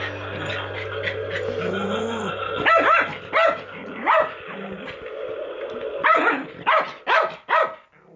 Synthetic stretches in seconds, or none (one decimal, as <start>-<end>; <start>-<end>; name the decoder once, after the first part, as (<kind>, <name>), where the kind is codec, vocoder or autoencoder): 3.8-4.4 (vocoder, Vocos)